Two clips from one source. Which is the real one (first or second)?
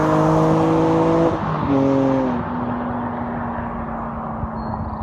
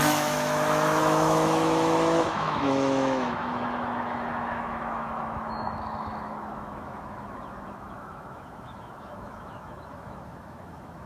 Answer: first